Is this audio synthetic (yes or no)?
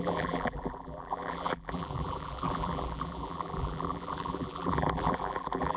yes